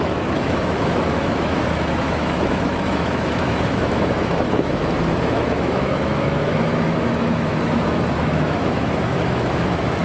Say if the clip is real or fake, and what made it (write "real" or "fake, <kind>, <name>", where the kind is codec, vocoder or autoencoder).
fake, autoencoder, DAC-VAE